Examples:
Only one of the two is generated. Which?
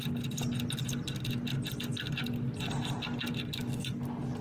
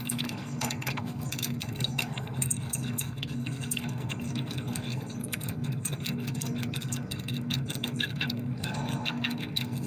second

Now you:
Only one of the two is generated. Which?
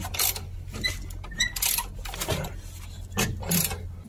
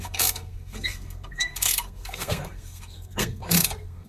second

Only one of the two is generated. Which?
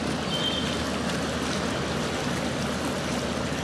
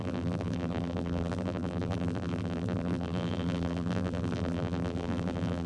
second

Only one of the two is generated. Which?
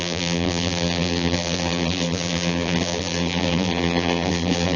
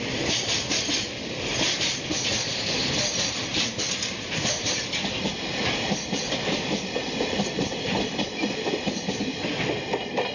first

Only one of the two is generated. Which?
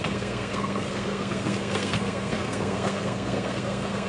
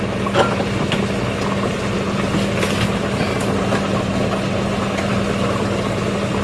first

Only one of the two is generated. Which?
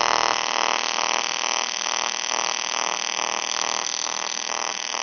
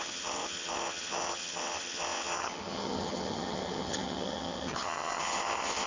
second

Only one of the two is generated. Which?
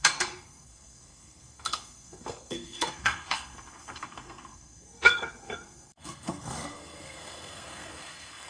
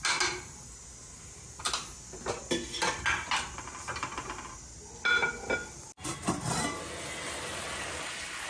first